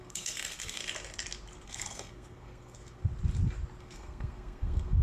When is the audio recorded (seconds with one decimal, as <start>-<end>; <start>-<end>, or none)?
0.8-1.6; 3.1-3.8